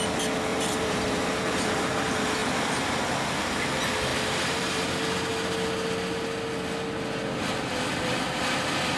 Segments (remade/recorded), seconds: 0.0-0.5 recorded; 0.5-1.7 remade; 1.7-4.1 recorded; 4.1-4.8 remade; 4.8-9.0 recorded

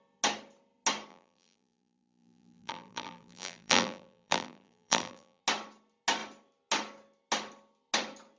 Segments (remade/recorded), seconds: 0.0-1.1 recorded; 1.1-5.4 remade; 5.4-8.4 recorded

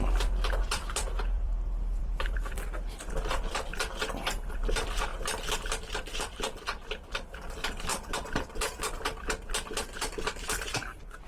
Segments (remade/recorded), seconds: 0.0-3.7 remade; 3.7-4.5 recorded; 4.5-5.1 remade; 5.1-5.6 recorded; 5.6-11.3 remade

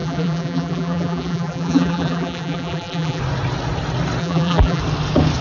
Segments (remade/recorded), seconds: 0.0-3.2 remade; 3.2-4.2 recorded; 4.2-4.8 remade; 4.8-5.4 recorded

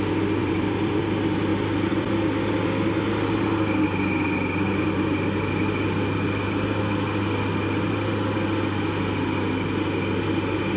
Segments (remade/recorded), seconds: 0.0-0.4 recorded; 0.4-1.0 remade; 1.0-1.5 recorded; 1.5-2.1 remade; 2.1-10.8 recorded

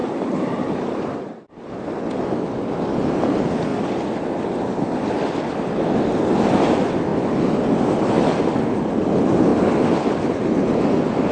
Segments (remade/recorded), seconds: 0.0-3.7 recorded; 3.7-5.4 remade; 5.4-7.1 recorded; 7.1-7.7 remade; 7.7-11.3 recorded

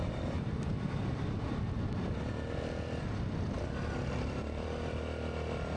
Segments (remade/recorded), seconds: 0.0-5.8 recorded

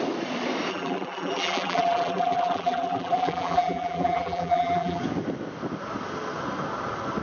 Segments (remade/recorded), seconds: 0.0-0.7 recorded; 0.7-5.0 remade; 5.0-7.2 recorded